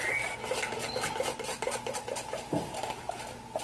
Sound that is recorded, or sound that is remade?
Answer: recorded